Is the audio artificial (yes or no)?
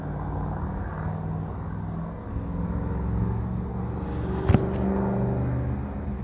no